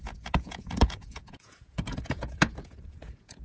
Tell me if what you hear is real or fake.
fake